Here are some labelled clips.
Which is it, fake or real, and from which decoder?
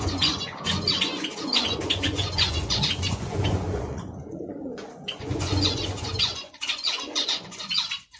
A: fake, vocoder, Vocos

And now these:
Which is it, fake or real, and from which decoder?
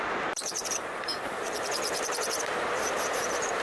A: fake, vocoder, BigVGAN v2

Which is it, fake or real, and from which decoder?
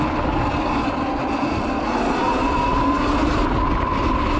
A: real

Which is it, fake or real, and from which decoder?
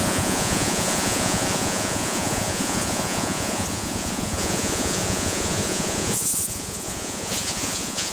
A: fake, vocoder, Vocos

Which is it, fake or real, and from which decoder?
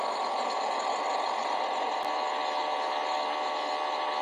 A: real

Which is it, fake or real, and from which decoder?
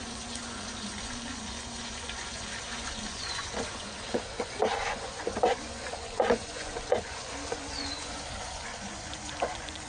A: fake, vocoder, Vocos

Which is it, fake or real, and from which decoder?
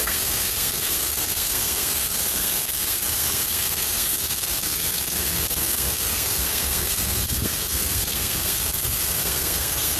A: fake, codec, SNAC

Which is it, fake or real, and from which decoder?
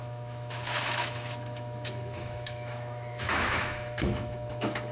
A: fake, autoencoder, DAC-VAE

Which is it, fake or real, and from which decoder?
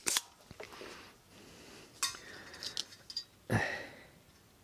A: real